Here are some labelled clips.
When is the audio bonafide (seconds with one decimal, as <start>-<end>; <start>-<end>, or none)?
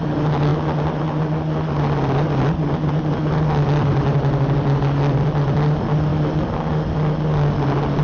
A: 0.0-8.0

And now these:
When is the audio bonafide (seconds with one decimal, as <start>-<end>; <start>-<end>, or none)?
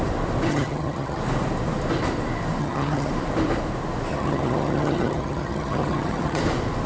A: 0.0-0.5; 1.2-2.6; 3.1-4.1; 6.4-6.9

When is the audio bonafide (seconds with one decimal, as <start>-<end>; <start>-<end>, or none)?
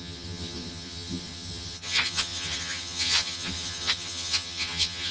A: none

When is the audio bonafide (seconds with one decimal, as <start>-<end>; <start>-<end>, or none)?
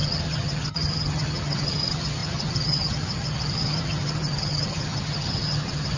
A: none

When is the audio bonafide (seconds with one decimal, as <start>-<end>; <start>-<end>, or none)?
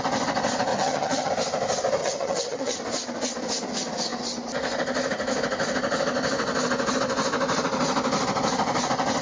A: 0.0-0.7; 1.3-2.0; 2.8-9.2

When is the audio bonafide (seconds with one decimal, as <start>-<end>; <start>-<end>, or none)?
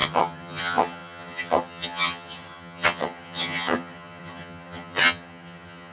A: none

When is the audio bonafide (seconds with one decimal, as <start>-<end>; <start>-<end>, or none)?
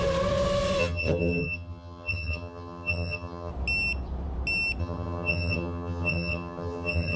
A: 0.0-0.8; 3.5-4.8